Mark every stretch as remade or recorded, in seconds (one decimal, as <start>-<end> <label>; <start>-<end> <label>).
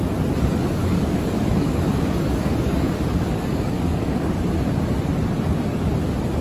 0.0-0.6 recorded; 0.6-4.4 remade; 4.4-6.4 recorded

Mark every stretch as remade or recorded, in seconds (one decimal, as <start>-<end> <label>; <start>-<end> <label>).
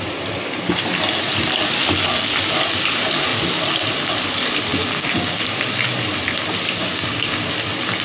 0.0-4.7 recorded; 4.7-5.4 remade; 5.4-6.8 recorded; 6.8-7.5 remade; 7.5-8.0 recorded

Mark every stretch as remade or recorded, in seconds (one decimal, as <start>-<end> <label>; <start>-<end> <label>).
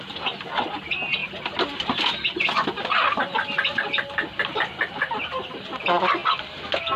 0.0-7.0 recorded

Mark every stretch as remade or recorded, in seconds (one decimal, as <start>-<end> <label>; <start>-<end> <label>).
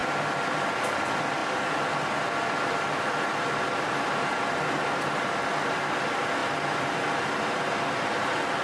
0.0-8.6 recorded